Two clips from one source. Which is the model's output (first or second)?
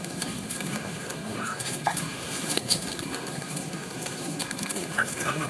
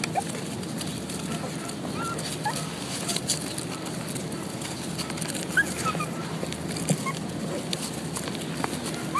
first